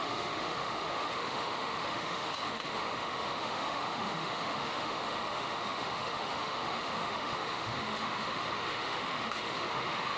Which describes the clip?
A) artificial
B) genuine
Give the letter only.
A